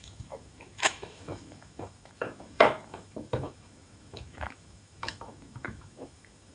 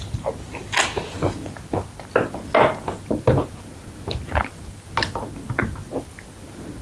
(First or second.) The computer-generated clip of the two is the first